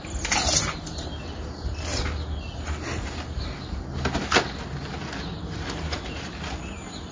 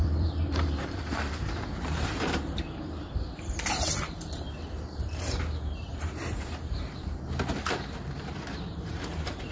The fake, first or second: second